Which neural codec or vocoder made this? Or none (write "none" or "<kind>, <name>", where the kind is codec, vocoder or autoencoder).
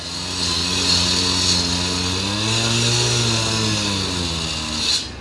none